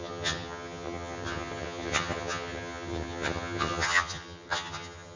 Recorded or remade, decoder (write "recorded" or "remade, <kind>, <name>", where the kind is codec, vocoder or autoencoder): remade, vocoder, HiFi-GAN